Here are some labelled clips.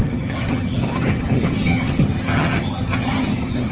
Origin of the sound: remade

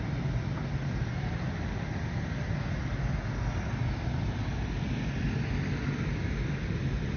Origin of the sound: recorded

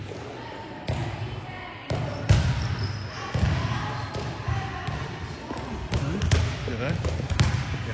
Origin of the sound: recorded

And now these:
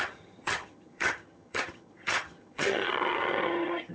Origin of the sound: remade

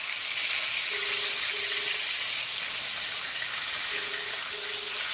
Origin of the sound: recorded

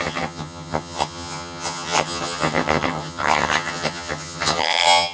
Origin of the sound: remade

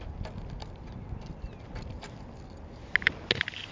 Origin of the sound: recorded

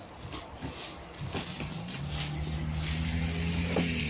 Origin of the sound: recorded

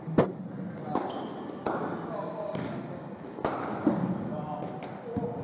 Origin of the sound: recorded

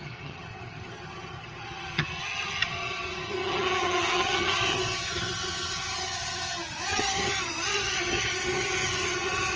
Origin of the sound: remade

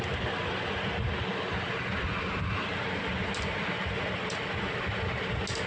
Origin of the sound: recorded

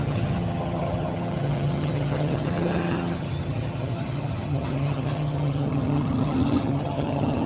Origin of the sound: remade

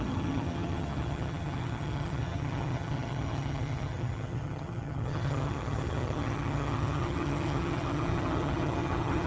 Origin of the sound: remade